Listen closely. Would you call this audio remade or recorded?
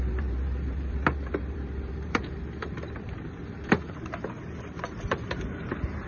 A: remade